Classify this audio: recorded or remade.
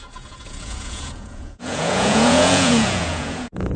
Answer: remade